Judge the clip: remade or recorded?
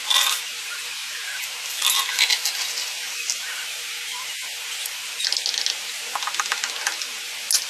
recorded